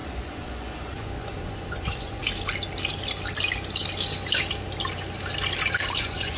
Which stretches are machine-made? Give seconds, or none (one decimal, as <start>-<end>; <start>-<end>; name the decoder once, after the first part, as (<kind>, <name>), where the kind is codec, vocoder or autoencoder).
0.0-2.2 (vocoder, Vocos); 6.0-6.4